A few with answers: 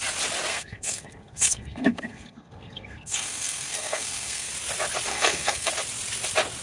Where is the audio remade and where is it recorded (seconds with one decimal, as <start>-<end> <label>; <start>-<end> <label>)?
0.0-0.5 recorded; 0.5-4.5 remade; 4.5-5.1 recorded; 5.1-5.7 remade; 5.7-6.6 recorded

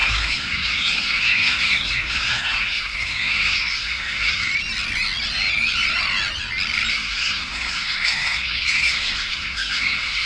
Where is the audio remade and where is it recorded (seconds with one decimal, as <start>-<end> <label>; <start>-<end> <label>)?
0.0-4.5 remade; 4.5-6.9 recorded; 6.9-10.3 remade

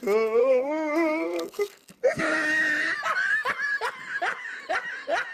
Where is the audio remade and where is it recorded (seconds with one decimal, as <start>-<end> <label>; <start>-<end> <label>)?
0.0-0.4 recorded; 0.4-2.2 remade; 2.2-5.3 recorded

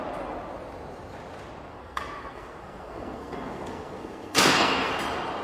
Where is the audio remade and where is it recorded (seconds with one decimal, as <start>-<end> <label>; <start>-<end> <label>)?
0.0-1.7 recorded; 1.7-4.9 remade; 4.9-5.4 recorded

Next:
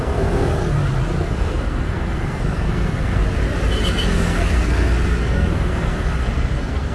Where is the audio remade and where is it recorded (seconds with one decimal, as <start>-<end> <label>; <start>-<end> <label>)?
0.0-0.6 remade; 0.6-1.2 recorded; 1.2-3.2 remade; 3.2-3.8 recorded; 3.8-6.9 remade

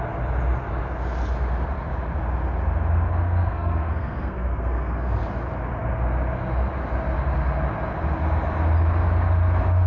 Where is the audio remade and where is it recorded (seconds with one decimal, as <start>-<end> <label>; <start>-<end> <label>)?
0.0-3.1 recorded; 3.1-5.2 remade; 5.2-9.9 recorded

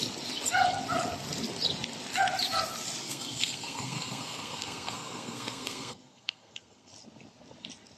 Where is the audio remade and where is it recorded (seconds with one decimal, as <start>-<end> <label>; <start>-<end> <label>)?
0.0-3.0 recorded; 3.0-6.9 remade; 6.9-8.0 recorded

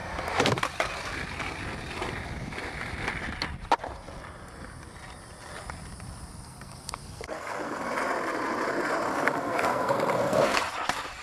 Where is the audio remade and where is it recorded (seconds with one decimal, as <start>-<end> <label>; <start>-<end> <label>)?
0.0-6.3 recorded; 6.3-7.9 remade; 7.9-9.1 recorded; 9.1-10.6 remade; 10.6-11.2 recorded